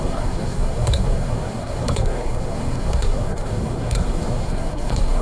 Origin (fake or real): fake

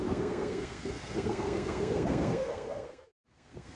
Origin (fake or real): fake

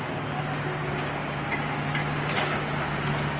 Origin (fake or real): real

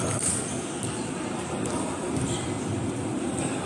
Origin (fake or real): real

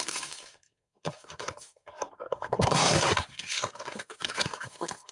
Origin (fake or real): fake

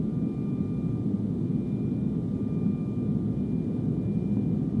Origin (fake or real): real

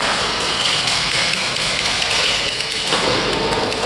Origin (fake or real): fake